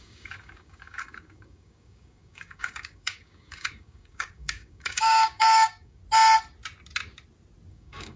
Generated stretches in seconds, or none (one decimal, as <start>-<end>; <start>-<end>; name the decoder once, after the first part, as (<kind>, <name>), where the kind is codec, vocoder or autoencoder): 0.0-6.0 (codec, DAC); 7.7-8.2